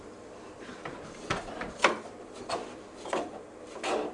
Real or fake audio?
fake